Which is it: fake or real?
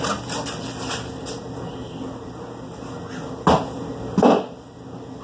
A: real